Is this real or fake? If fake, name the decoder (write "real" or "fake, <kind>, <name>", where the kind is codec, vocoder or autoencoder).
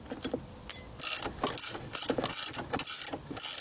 real